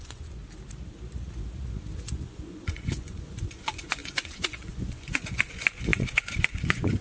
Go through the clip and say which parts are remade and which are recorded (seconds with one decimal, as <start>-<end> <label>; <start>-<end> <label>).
0.0-0.4 remade; 0.4-2.1 recorded; 2.1-7.0 remade